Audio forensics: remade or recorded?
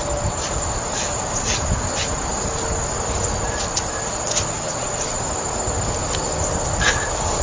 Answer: recorded